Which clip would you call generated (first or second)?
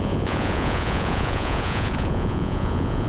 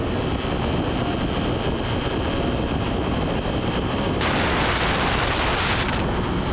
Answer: first